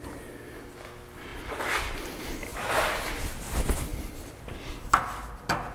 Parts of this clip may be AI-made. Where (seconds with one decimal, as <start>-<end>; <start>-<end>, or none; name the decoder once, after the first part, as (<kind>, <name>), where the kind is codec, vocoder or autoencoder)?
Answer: 1.3-1.9 (vocoder, BigVGAN v2); 2.5-3.2; 3.9-4.7